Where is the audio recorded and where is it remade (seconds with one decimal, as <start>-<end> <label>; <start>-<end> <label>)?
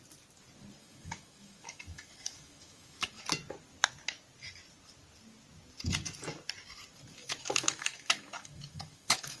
0.0-0.8 recorded; 0.8-3.2 remade; 3.2-7.2 recorded; 7.2-9.4 remade